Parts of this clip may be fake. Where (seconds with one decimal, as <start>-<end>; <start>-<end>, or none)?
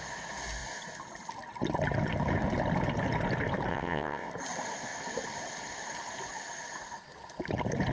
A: 3.7-4.3